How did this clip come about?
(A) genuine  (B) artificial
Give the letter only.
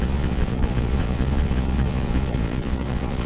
B